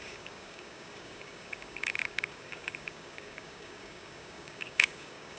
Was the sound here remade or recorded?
remade